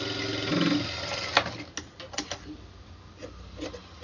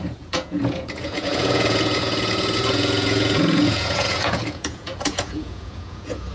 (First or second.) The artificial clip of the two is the second